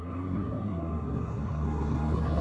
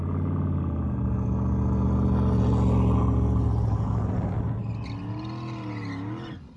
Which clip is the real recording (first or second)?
second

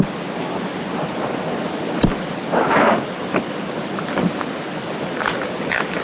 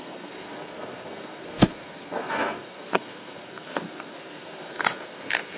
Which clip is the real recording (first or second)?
first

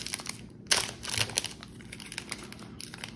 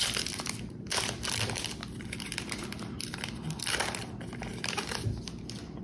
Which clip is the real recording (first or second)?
first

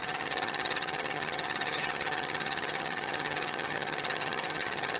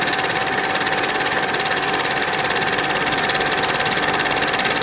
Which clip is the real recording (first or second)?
second